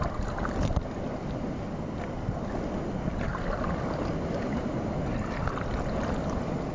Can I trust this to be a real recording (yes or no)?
yes